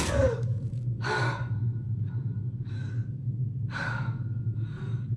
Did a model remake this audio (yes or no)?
yes